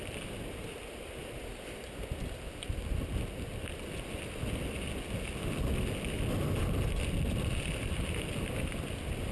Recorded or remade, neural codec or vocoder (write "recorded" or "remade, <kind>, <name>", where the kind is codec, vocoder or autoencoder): recorded